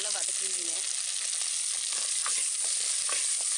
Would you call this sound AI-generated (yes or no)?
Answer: no